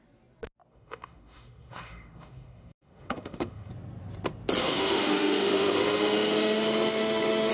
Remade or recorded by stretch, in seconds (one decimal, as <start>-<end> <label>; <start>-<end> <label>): 0.0-0.7 recorded; 0.7-3.7 remade; 3.7-4.6 recorded; 4.6-7.5 remade